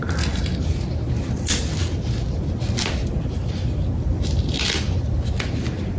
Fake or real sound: real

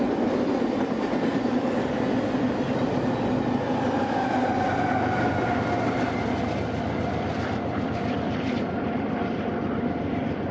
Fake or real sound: real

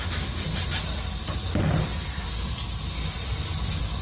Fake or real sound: real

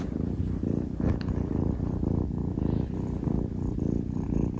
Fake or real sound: real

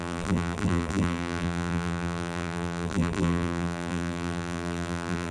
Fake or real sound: fake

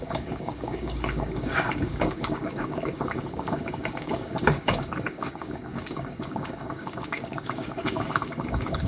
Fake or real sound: fake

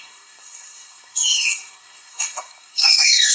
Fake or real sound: fake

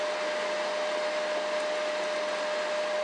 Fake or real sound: real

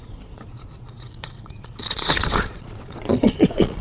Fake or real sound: fake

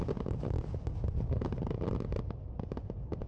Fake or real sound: real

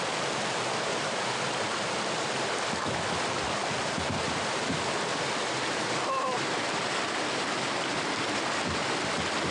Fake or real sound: real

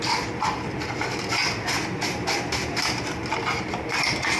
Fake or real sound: real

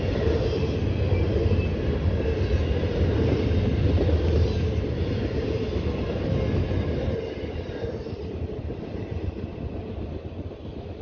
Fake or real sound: real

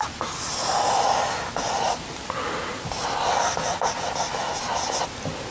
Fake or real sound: real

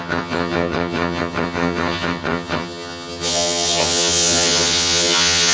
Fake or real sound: fake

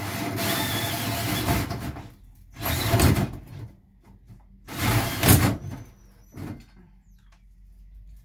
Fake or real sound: real